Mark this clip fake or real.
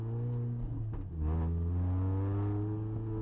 real